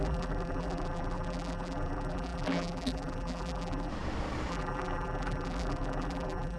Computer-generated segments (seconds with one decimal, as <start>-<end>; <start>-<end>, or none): 0.0-3.9; 4.5-6.6